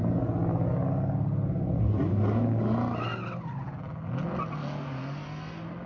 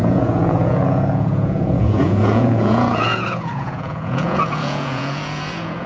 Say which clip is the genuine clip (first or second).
first